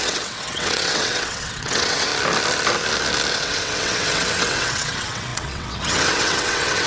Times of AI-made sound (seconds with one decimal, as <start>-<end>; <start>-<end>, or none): 0.0-2.1; 3.3-6.9